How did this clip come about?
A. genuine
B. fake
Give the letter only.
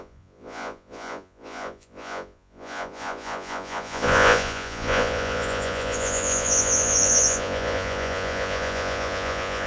B